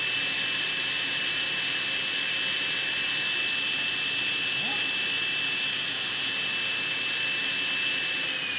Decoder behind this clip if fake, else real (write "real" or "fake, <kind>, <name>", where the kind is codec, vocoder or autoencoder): real